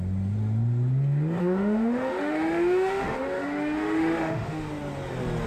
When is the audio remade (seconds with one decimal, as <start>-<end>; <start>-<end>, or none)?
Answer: 1.4-4.7